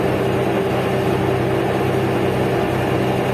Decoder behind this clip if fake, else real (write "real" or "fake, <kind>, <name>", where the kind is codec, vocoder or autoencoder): real